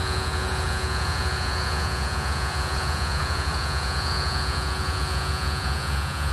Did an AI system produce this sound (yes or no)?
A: yes